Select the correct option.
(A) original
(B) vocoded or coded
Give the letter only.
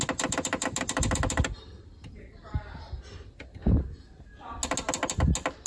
A